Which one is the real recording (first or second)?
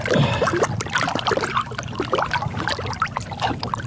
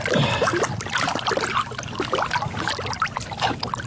second